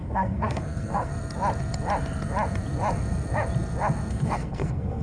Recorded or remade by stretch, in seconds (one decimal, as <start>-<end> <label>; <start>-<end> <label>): 0.0-1.1 remade; 1.1-4.1 recorded; 4.1-5.0 remade